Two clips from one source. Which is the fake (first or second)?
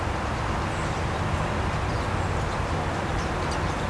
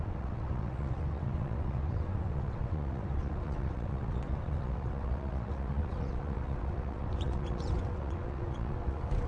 second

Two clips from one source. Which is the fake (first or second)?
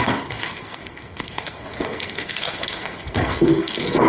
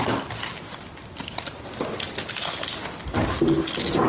first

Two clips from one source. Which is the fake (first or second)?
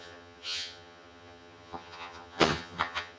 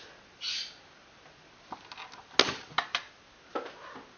first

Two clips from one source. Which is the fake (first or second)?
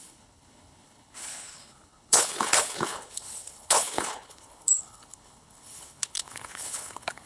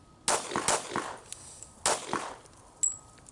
first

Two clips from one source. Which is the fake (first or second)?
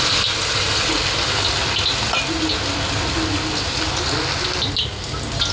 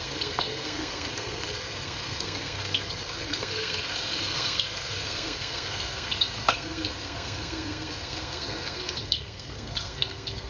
second